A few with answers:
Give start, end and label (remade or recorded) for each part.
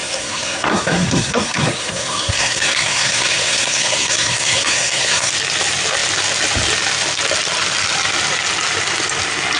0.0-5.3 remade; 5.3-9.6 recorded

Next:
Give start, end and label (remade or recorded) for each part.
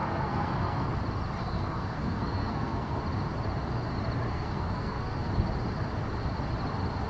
0.0-0.9 remade; 0.9-1.4 recorded; 1.4-3.0 remade; 3.0-4.3 recorded; 4.3-5.3 remade; 5.3-7.1 recorded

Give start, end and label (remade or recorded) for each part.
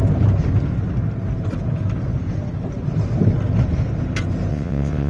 0.0-4.5 recorded; 4.5-5.1 remade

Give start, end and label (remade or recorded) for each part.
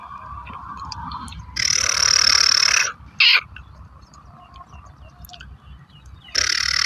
0.0-6.9 recorded